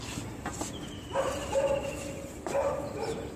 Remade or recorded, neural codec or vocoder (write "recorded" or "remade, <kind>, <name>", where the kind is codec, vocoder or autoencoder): recorded